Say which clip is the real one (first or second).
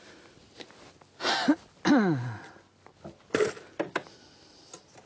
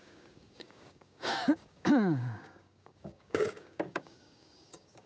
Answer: first